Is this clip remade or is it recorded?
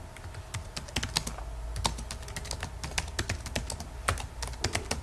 recorded